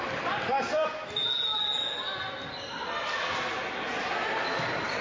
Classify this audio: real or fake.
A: real